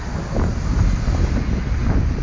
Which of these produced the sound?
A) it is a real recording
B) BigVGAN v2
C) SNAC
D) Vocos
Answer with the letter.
A